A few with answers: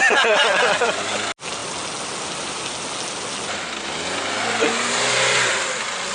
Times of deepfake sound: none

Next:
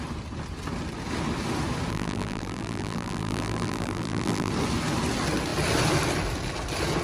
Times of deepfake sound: 1.9-4.5

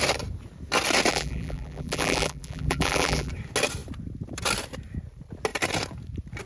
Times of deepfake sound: 1.1-3.3

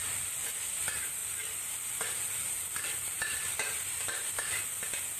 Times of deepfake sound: 0.0-0.7; 1.2-4.3

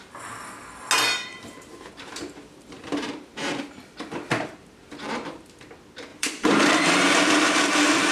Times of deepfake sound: 1.3-5.5; 6.1-7.3

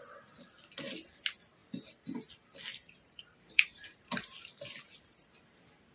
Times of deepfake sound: 2.7-4.9

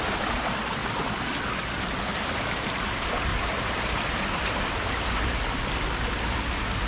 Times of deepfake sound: 0.8-2.7; 3.3-6.5